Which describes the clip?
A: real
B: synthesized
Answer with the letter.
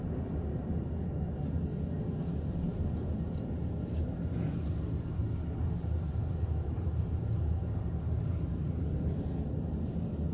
A